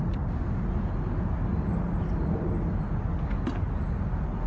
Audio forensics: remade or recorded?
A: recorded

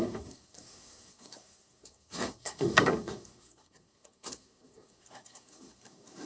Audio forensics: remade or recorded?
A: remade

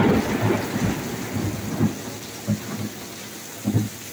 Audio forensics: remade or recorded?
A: recorded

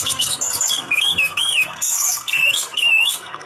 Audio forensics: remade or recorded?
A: remade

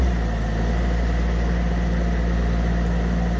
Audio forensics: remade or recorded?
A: recorded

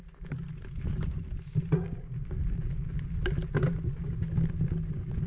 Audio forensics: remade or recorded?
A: recorded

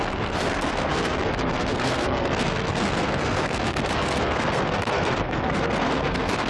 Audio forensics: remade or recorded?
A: remade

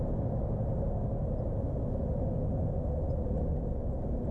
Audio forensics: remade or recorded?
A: recorded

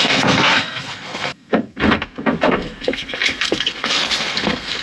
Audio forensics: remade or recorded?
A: remade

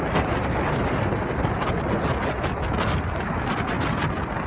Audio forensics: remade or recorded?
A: recorded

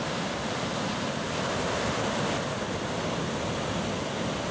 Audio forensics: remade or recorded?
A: recorded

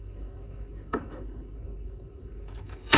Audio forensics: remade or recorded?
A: remade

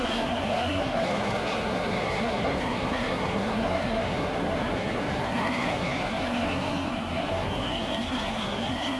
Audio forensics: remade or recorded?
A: remade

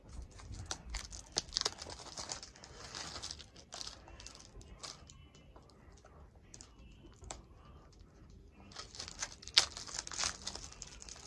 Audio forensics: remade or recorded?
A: recorded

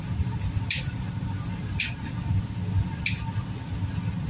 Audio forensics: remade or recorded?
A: recorded